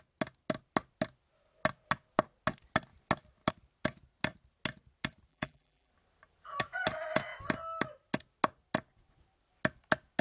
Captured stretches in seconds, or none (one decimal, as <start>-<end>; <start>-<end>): 0.0-5.3; 5.9-10.2